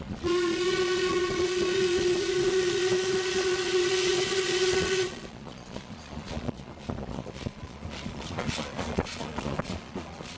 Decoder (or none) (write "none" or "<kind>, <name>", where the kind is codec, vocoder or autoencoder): vocoder, Vocos